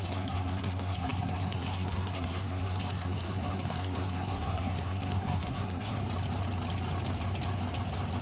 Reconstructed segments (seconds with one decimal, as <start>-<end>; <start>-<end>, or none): 0.0-6.0